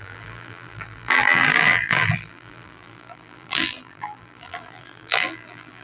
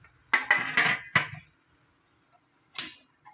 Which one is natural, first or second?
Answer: second